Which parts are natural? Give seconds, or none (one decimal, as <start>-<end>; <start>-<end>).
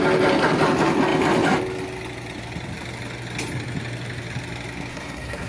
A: 0.0-4.9